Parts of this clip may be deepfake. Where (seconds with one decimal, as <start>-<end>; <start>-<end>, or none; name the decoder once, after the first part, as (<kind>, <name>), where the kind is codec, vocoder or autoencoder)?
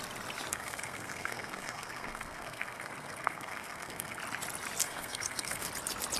0.5-4.2 (codec, SNAC); 4.8-5.7